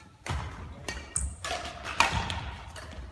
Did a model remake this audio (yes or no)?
no